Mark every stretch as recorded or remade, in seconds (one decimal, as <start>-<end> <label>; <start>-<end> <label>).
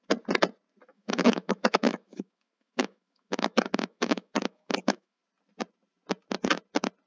0.0-0.9 recorded; 0.9-5.2 remade; 5.2-7.1 recorded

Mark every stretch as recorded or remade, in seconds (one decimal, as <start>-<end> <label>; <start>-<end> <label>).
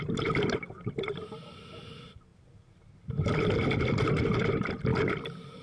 0.0-5.6 recorded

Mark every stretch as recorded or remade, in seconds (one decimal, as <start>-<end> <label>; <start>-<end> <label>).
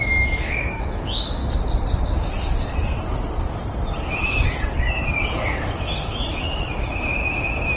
0.0-1.4 remade; 1.4-5.5 recorded; 5.5-7.8 remade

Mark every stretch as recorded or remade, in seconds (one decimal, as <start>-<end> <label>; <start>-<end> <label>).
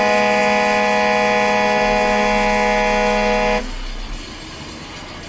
0.0-5.3 recorded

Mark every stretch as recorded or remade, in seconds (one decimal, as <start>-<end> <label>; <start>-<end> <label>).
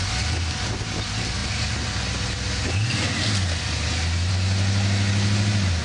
0.0-5.8 recorded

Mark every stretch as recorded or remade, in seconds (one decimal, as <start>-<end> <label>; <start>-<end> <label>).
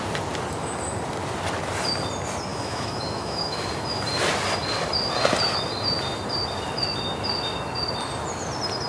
0.0-2.5 recorded; 2.5-3.7 remade; 3.7-8.9 recorded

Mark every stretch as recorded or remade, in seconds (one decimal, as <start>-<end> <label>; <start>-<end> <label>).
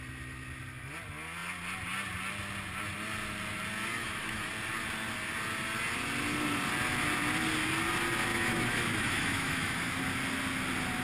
0.0-4.0 recorded; 4.0-4.5 remade; 4.5-8.3 recorded; 8.3-9.9 remade; 9.9-11.0 recorded